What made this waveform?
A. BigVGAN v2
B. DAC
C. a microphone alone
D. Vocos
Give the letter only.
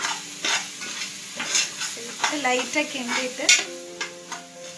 C